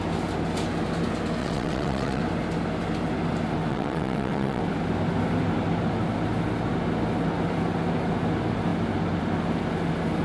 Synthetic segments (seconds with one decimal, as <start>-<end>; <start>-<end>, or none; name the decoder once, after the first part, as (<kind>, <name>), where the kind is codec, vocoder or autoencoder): 1.4-2.2 (vocoder, WaveNeXt); 3.7-4.6